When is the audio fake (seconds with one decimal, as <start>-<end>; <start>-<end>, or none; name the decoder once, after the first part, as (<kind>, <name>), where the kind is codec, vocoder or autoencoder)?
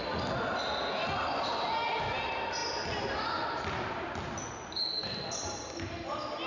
none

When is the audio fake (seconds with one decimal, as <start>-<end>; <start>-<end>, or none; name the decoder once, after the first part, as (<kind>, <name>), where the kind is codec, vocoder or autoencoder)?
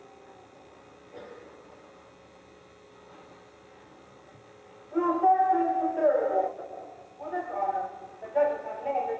none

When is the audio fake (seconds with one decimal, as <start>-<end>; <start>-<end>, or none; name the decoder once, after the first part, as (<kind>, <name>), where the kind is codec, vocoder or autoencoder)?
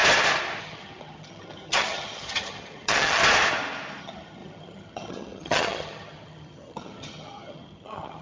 0.6-3.2 (vocoder, HiFi-GAN); 4.0-8.2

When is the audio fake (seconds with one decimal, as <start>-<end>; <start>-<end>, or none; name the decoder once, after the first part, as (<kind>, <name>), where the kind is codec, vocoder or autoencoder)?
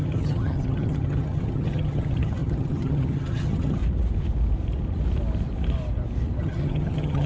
0.0-3.8 (vocoder, HiFi-GAN); 6.4-7.3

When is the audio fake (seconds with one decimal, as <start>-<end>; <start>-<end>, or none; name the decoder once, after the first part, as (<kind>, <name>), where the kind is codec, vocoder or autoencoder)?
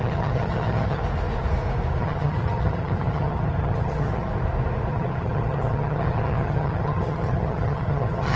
0.0-1.0 (vocoder, HiFi-GAN); 2.0-4.3; 4.9-8.4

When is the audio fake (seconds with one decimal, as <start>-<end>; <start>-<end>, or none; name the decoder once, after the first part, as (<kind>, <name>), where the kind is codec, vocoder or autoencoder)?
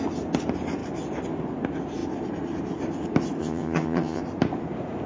3.4-4.2 (vocoder, HiFi-GAN)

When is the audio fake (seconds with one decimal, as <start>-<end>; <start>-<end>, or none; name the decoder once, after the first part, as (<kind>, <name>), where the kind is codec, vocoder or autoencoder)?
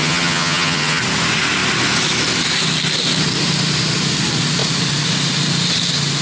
0.0-1.0 (vocoder, HiFi-GAN)